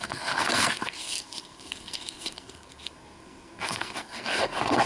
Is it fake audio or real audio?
fake